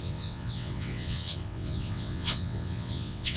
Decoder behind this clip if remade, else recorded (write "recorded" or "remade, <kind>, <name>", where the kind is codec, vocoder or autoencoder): remade, vocoder, WaveNeXt